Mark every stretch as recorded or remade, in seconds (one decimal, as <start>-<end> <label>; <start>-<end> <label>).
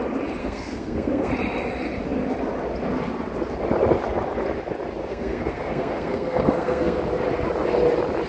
0.0-0.4 recorded; 0.4-1.3 remade; 1.3-5.1 recorded; 5.1-7.0 remade; 7.0-8.3 recorded